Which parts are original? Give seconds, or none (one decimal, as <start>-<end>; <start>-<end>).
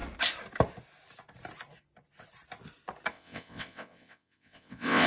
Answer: 0.0-3.1